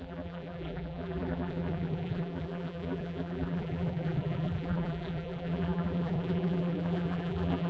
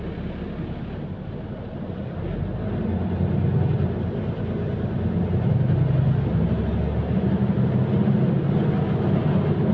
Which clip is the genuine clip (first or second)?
second